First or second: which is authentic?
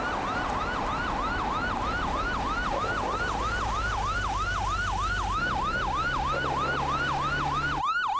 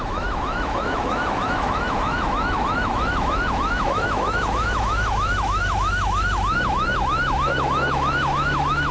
first